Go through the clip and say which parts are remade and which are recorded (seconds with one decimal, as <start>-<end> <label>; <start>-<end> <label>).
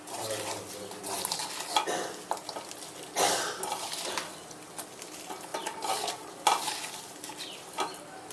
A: 0.0-8.3 recorded